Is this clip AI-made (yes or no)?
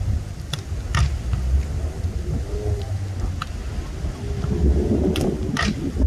no